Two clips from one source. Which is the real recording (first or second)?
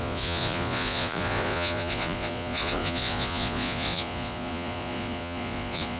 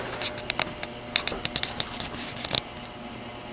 second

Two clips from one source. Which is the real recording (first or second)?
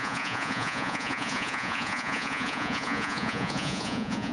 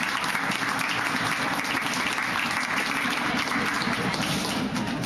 second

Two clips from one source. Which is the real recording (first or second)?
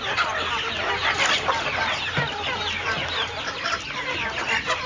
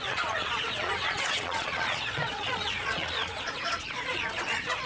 first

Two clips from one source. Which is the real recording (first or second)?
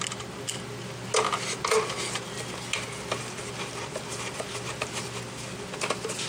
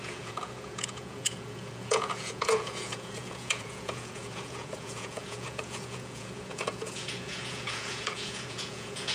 first